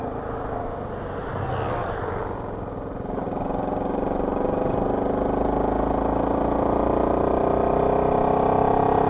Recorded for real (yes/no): yes